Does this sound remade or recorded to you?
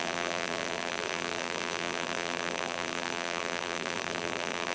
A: remade